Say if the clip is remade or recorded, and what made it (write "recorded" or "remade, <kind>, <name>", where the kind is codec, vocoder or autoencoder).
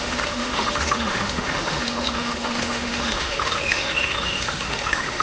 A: remade, autoencoder, DAC-VAE